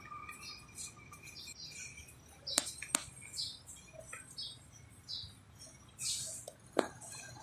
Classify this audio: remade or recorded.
recorded